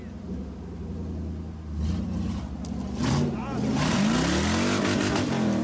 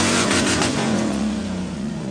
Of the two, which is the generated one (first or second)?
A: second